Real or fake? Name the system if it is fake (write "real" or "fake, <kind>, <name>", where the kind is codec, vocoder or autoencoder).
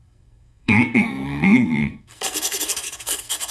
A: fake, codec, SNAC